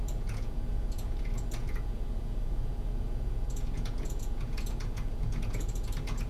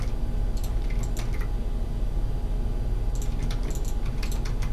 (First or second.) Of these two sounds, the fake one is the first